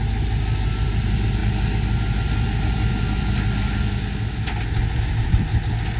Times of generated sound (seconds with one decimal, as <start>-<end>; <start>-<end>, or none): none